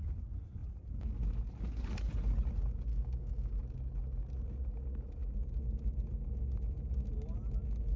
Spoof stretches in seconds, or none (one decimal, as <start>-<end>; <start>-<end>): 2.9-3.6